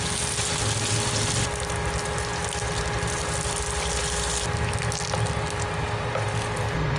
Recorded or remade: recorded